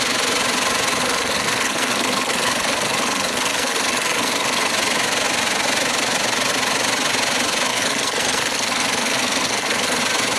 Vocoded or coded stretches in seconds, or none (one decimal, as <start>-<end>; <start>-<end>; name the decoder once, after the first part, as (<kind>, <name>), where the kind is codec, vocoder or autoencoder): 1.0-4.7 (codec, SNAC); 7.7-10.0